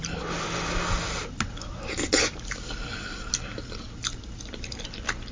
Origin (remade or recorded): recorded